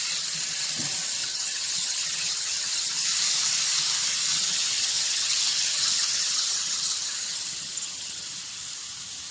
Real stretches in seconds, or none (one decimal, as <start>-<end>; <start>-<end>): 0.0-1.2; 2.9-4.3; 8.3-9.3